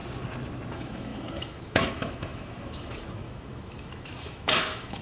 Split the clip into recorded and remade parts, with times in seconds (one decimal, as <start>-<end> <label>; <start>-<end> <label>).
0.0-0.7 recorded; 0.7-5.0 remade